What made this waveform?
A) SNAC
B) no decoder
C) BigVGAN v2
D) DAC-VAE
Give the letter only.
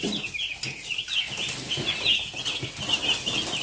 B